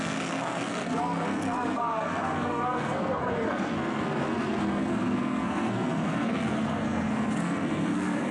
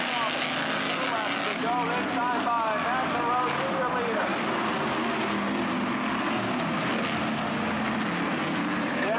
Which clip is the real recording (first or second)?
second